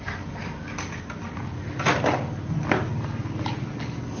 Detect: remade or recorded recorded